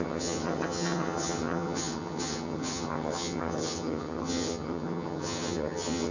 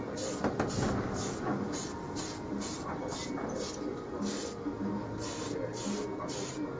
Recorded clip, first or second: second